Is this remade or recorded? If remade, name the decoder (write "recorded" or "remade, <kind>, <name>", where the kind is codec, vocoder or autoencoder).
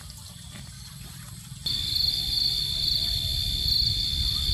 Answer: recorded